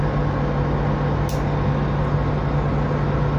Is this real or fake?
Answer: real